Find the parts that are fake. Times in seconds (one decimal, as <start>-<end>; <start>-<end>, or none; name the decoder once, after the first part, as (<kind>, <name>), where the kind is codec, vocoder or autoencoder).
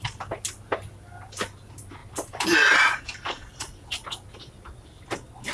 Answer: none